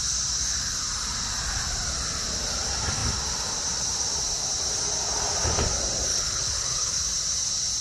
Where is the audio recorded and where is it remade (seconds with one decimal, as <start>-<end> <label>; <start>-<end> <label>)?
0.0-6.1 recorded; 6.1-7.0 remade; 7.0-7.8 recorded